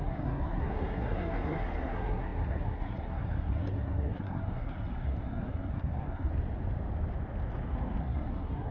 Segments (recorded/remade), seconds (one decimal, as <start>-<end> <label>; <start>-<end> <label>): 0.0-6.3 remade; 6.3-8.0 recorded; 8.0-8.7 remade